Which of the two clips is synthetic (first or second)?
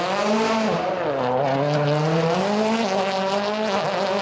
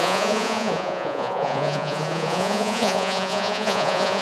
second